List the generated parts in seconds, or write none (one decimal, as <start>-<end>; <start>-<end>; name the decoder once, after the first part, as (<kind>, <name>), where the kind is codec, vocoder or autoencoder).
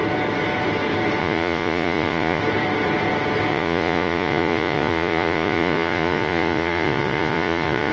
1.2-2.4 (vocoder, Vocos); 3.5-7.9